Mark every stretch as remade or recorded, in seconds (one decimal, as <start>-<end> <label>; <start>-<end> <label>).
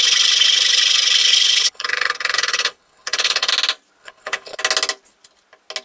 0.0-1.2 recorded; 1.2-3.5 remade; 3.5-4.0 recorded; 4.0-4.6 remade; 4.6-5.8 recorded